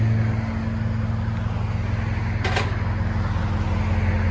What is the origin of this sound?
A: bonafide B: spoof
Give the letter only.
A